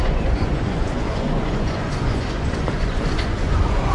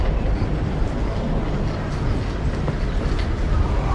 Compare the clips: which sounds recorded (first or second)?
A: second